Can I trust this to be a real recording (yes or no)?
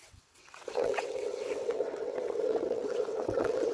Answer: no